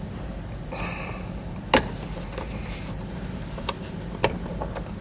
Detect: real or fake real